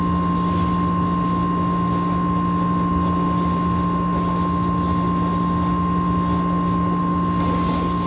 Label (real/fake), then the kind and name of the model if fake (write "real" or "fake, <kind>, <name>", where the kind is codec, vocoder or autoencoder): real